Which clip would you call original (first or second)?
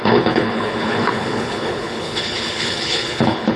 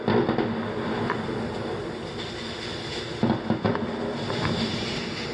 second